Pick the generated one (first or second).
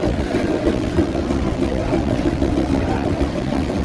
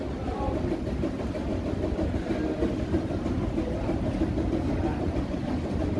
first